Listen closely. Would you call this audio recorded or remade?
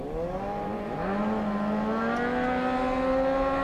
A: recorded